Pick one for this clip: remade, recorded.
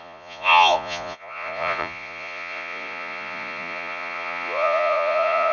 remade